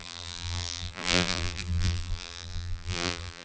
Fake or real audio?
fake